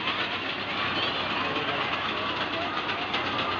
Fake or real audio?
real